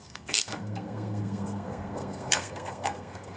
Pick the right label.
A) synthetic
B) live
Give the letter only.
A